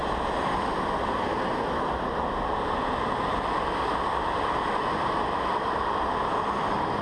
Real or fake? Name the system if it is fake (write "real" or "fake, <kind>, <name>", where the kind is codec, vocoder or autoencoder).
real